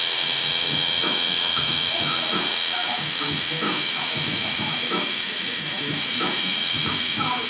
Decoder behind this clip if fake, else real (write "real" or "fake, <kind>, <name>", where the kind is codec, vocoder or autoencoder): fake, autoencoder, DAC-VAE